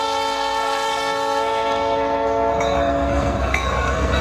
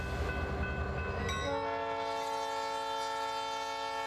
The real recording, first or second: second